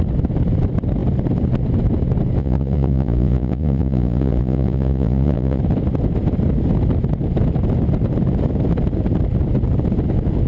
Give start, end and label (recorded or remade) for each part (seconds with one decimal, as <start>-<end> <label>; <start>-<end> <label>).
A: 0.0-2.4 recorded; 2.4-5.6 remade; 5.6-10.5 recorded